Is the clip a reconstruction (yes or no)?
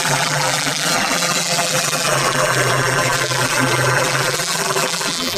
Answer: yes